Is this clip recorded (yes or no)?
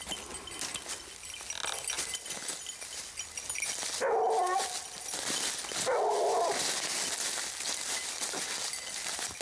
yes